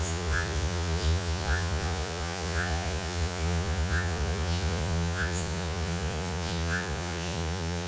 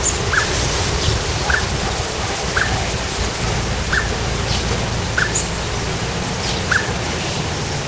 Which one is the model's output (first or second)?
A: first